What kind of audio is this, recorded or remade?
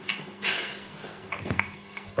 remade